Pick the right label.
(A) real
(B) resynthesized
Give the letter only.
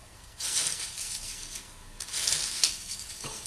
B